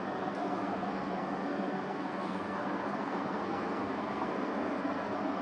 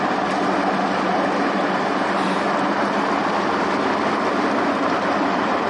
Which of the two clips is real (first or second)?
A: second